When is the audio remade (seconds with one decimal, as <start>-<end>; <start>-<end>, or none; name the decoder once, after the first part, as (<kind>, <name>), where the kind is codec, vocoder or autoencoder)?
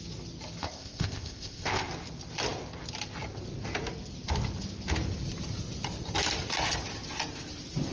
0.6-1.9 (codec, ZipCodec)